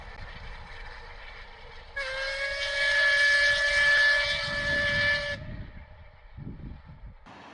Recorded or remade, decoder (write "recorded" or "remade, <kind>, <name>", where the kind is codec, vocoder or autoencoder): recorded